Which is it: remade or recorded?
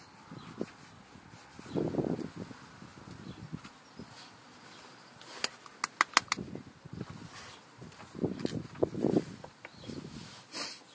recorded